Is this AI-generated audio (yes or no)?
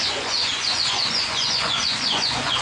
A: yes